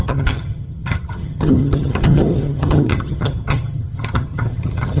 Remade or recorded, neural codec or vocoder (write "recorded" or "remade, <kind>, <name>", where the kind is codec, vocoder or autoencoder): remade, vocoder, HiFi-GAN